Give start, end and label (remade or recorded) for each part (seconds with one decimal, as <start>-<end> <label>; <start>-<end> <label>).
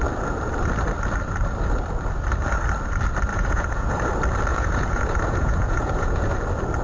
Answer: 0.0-3.3 recorded; 3.3-4.1 remade; 4.1-4.5 recorded; 4.5-6.3 remade; 6.3-6.8 recorded